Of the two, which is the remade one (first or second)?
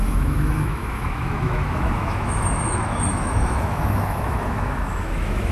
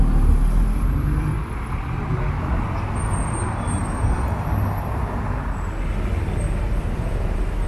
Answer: first